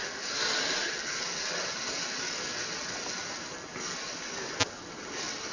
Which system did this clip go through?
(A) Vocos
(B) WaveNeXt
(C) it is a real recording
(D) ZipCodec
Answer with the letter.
C